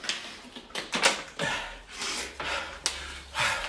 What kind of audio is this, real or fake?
real